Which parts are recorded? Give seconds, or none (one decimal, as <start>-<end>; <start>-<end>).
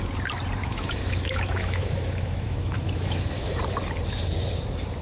0.0-0.6; 3.6-5.0